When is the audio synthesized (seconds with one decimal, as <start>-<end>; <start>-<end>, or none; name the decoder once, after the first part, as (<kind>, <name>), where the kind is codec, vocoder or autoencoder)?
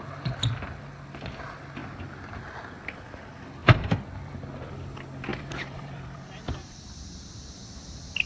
3.6-4.3 (vocoder, BigVGAN v2); 5.3-6.9